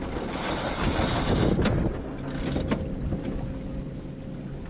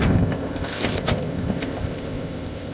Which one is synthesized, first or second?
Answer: second